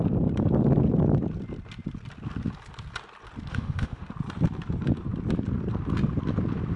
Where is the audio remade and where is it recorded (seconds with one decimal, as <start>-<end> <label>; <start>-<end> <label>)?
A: 0.0-3.5 recorded; 3.5-4.1 remade; 4.1-6.8 recorded